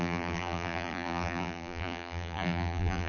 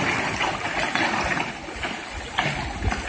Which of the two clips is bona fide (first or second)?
second